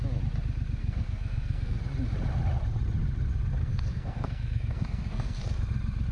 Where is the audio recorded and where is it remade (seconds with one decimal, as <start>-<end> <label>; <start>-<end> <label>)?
0.0-0.8 recorded; 0.8-1.8 remade; 1.8-3.6 recorded; 3.6-5.4 remade; 5.4-6.1 recorded